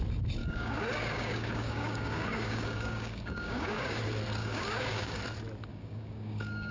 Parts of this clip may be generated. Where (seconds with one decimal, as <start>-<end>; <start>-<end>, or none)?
0.4-4.0; 4.4-5.2; 5.7-6.7